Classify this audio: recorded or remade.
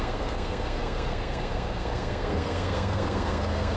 remade